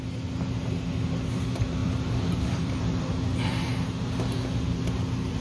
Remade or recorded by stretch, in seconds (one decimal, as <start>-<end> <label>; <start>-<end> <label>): 0.0-1.8 recorded; 1.8-3.1 remade; 3.1-5.4 recorded